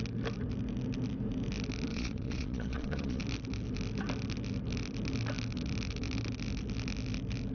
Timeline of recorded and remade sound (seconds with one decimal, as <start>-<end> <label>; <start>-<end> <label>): 0.0-1.9 recorded; 1.9-3.2 remade; 3.2-7.5 recorded